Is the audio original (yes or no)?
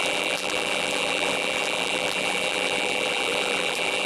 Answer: no